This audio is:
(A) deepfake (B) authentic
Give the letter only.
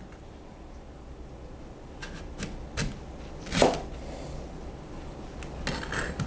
B